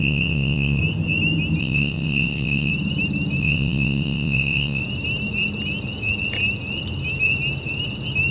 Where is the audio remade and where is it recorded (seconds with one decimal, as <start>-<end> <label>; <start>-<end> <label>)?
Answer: 0.0-0.8 remade; 0.8-1.6 recorded; 1.6-2.7 remade; 2.7-3.4 recorded; 3.4-4.8 remade; 4.8-8.3 recorded